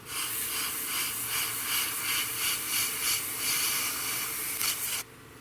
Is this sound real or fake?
real